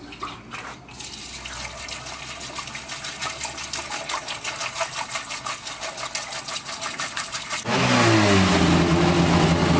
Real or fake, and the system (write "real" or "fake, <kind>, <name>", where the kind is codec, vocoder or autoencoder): real